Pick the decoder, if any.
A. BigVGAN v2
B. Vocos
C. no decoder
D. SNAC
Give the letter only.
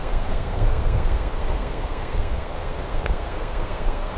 D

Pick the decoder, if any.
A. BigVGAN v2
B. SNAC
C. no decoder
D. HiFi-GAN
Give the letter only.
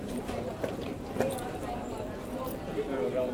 A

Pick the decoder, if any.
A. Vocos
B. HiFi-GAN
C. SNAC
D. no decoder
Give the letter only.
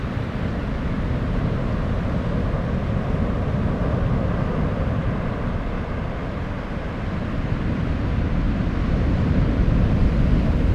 D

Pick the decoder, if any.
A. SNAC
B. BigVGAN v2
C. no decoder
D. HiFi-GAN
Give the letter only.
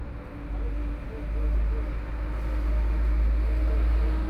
C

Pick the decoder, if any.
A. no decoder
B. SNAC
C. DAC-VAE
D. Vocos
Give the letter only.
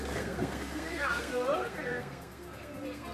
B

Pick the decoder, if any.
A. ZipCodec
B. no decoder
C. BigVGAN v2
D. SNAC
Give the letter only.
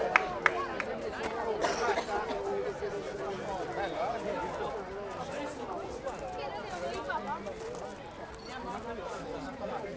B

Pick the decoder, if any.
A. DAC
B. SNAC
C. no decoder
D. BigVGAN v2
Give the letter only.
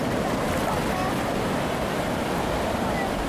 C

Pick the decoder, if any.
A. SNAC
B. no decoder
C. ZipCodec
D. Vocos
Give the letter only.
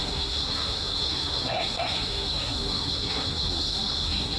A